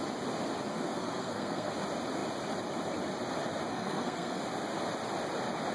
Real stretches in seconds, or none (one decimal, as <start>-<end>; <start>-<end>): 0.0-0.7; 1.7-3.7; 4.4-5.7